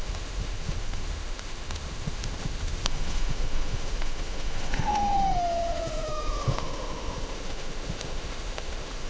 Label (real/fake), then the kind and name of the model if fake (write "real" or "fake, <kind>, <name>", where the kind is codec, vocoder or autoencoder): fake, autoencoder, DAC-VAE